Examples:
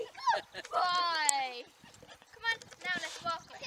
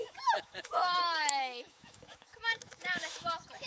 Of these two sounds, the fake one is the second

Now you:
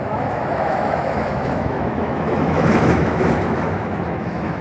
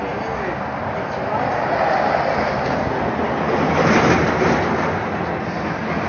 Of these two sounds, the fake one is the first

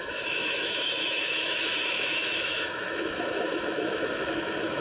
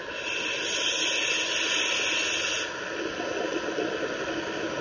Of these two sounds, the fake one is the first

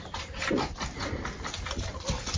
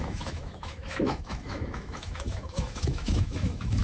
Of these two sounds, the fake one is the second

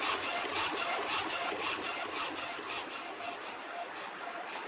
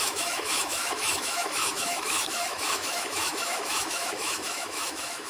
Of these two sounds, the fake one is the second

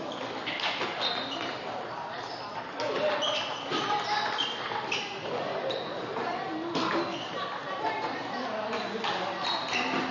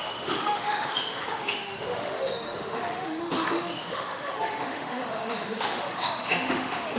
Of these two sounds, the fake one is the second